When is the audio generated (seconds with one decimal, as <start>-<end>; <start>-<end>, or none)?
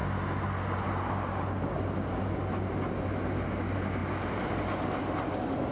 none